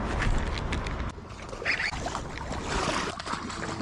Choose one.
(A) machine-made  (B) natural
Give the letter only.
B